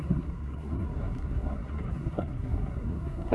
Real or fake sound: fake